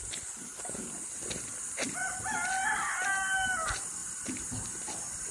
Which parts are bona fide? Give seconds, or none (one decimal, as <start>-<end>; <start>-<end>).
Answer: 0.0-5.3